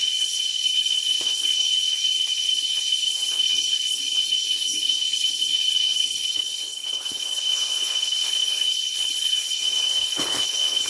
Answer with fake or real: fake